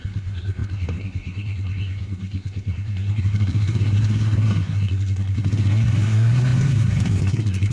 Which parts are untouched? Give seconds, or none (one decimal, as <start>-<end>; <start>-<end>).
none